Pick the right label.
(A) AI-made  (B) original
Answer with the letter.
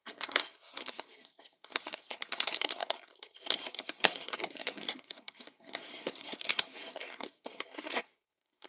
A